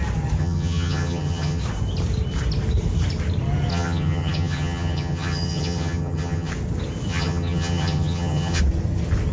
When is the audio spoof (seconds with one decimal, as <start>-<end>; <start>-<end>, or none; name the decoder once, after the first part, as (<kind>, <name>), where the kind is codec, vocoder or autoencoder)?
0.4-1.6 (vocoder, HiFi-GAN); 3.7-6.5; 7.1-8.6